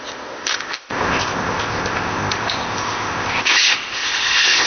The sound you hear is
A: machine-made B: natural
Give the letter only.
A